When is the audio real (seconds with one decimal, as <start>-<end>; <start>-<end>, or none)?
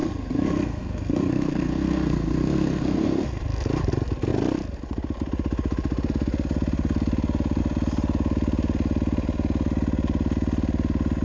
3.4-11.2